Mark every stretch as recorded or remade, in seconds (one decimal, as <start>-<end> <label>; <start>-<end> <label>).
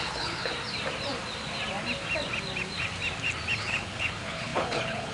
0.0-0.5 remade; 0.5-3.6 recorded; 3.6-5.1 remade